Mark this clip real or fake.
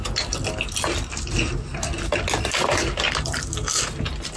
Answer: real